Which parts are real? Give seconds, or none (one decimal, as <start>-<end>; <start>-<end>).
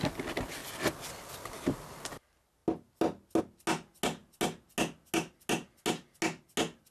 0.0-6.9